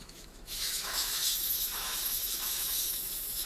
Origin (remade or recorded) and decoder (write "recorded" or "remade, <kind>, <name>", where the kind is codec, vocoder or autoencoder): remade, autoencoder, DAC-VAE